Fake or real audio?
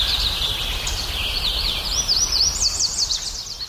fake